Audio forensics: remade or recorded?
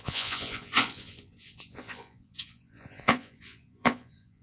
remade